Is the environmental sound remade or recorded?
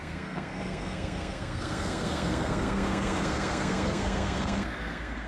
remade